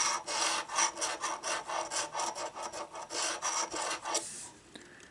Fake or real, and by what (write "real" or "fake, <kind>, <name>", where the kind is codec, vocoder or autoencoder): real